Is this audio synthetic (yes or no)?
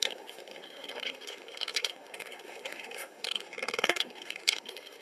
yes